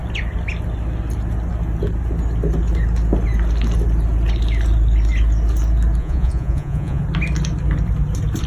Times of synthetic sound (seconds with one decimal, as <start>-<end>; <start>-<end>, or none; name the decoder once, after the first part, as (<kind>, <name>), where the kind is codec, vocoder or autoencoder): 6.0-7.0 (vocoder, Vocos)